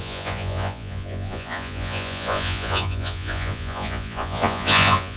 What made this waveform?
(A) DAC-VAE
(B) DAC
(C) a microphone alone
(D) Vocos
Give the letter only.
D